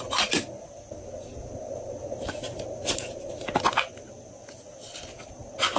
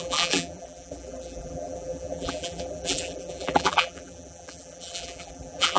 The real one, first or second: first